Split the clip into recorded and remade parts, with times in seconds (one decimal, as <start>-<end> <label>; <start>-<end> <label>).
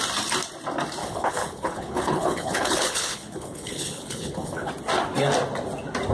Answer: 0.0-1.0 recorded; 1.0-4.7 remade; 4.7-6.1 recorded